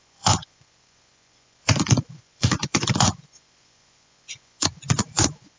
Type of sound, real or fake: fake